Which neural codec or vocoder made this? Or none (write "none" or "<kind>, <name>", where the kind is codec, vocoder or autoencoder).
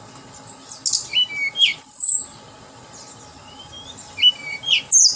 none